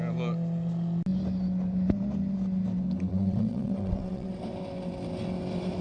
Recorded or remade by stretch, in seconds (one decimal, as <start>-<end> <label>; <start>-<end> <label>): 0.0-3.1 recorded; 3.1-4.3 remade; 4.3-5.8 recorded